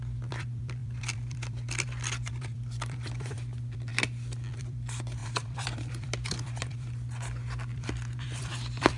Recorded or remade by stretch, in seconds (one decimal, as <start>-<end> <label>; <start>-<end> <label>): 0.0-3.9 remade; 3.9-4.5 recorded; 4.5-9.0 remade